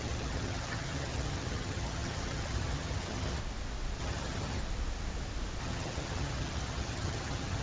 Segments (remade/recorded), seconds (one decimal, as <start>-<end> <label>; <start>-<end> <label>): 0.0-3.4 remade; 3.4-4.0 recorded; 4.0-4.6 remade; 4.6-5.6 recorded; 5.6-7.6 remade